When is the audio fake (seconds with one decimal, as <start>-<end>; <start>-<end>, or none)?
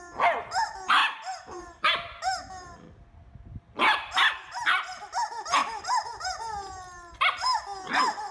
none